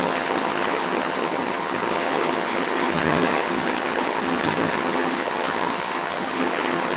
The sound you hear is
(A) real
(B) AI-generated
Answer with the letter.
B